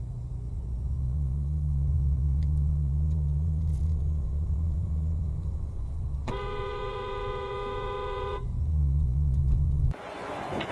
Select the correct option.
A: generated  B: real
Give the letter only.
A